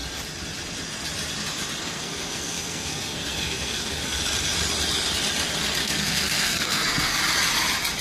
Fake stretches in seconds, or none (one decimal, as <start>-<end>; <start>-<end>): 1.8-4.2; 5.8-7.2